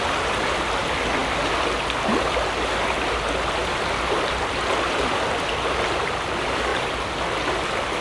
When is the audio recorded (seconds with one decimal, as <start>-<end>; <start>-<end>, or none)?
0.0-8.0